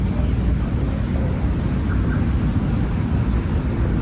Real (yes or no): yes